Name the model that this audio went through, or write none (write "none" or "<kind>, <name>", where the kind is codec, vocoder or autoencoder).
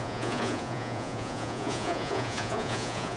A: vocoder, Vocos